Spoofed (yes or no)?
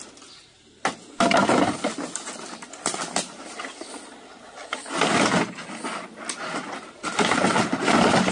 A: no